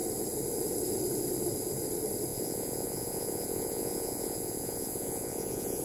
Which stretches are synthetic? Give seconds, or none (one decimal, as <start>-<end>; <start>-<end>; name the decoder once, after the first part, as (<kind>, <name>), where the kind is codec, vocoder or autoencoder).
2.3-5.8 (vocoder, Vocos)